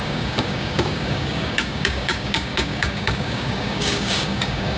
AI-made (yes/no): yes